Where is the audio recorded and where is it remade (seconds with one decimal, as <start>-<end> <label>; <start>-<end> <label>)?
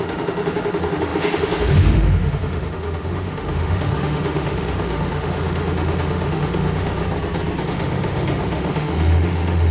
0.0-7.0 remade; 7.0-7.6 recorded; 7.6-9.7 remade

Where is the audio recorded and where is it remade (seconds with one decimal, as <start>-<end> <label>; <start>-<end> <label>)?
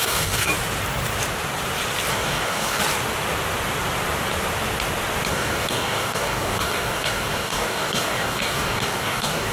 0.0-0.5 remade; 0.5-2.1 recorded; 2.1-2.8 remade; 2.8-5.3 recorded; 5.3-9.5 remade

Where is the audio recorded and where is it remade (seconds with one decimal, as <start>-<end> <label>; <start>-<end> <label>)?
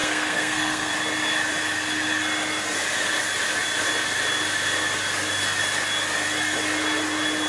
0.0-0.9 remade; 0.9-7.5 recorded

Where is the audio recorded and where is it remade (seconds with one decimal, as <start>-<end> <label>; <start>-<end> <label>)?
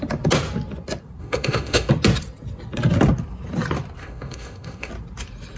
0.0-1.2 recorded; 1.2-1.9 remade; 1.9-4.0 recorded; 4.0-4.9 remade; 4.9-5.6 recorded